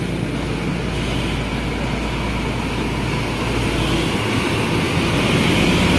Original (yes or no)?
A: yes